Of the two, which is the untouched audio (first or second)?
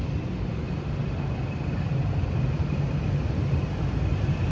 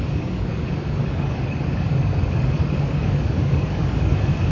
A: first